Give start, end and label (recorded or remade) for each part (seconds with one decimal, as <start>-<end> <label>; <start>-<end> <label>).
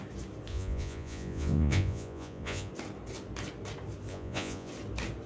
0.0-0.5 recorded; 0.5-2.7 remade; 2.7-4.1 recorded; 4.1-4.7 remade; 4.7-5.3 recorded